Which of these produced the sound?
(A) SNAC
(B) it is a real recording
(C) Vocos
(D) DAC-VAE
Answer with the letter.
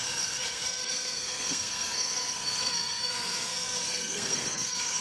A